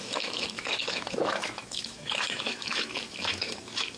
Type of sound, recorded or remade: remade